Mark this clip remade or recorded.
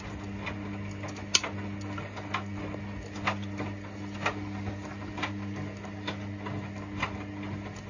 recorded